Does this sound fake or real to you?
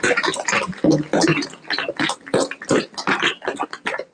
real